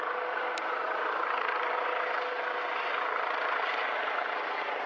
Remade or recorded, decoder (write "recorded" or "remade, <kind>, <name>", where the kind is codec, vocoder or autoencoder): recorded